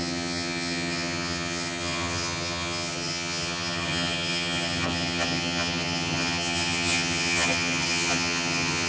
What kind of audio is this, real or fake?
fake